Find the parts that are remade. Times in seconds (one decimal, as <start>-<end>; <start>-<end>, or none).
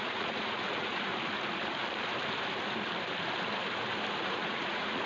0.0-1.1; 4.2-5.1